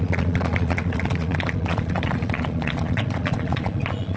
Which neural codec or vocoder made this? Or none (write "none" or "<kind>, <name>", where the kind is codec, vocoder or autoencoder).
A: vocoder, Vocos